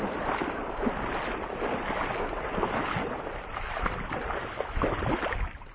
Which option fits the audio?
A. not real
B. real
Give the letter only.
B